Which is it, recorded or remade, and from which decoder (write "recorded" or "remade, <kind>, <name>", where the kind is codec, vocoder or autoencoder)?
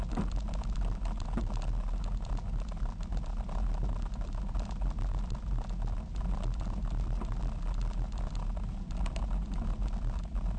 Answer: recorded